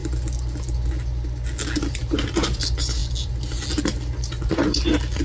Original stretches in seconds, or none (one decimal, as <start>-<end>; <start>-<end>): 0.0-5.2